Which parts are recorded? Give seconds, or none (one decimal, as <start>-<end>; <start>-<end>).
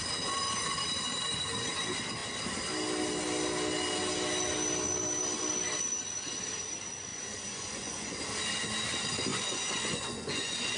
0.0-7.1; 8.2-9.3